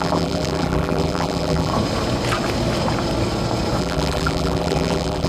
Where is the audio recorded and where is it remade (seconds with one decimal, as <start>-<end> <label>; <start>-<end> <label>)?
0.0-1.7 remade; 1.7-3.8 recorded; 3.8-5.3 remade